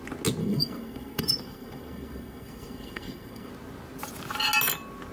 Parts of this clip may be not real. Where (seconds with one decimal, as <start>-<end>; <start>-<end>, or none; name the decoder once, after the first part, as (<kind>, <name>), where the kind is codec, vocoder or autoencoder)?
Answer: 0.4-3.5 (codec, SNAC)